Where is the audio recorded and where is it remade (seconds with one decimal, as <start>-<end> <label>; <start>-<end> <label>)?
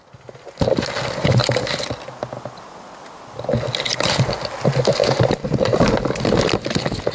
0.0-5.0 recorded; 5.0-5.9 remade; 5.9-7.1 recorded